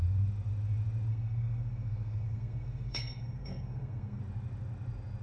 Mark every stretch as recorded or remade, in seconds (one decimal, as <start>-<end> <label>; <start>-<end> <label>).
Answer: 0.0-1.1 recorded; 1.1-4.2 remade; 4.2-5.2 recorded